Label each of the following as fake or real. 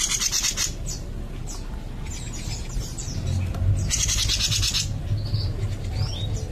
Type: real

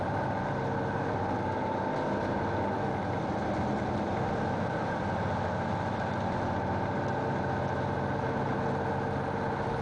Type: real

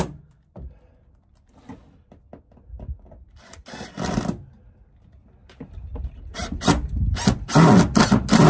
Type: real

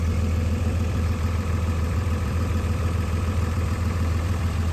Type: fake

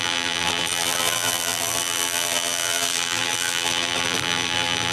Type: fake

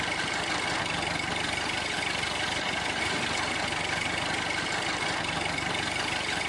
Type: fake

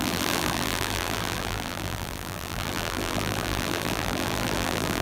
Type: fake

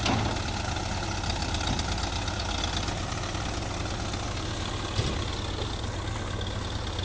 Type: real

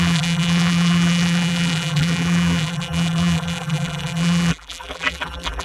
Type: fake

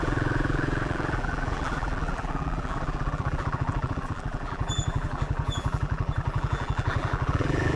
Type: fake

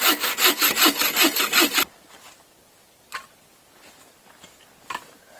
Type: fake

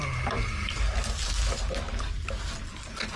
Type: real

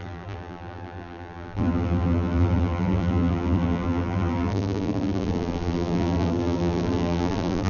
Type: fake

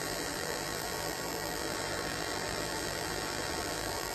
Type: fake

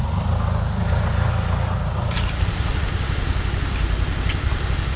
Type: fake